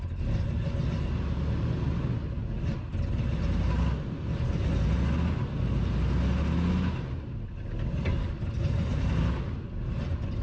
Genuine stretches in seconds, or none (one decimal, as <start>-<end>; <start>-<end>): 0.0-8.9; 9.4-10.4